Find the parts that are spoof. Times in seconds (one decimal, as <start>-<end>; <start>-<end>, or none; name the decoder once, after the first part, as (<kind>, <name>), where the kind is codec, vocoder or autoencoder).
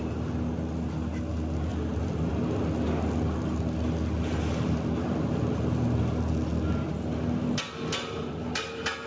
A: 1.7-2.3 (vocoder, BigVGAN v2)